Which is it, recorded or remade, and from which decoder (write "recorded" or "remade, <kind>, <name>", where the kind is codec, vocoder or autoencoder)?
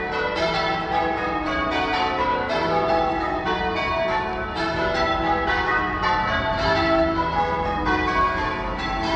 recorded